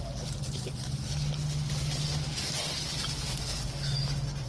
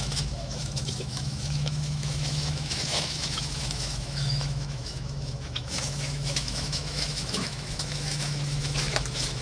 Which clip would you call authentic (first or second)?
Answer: first